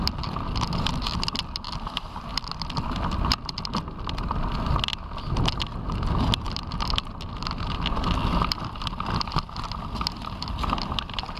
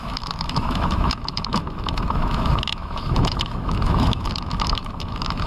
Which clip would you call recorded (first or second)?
first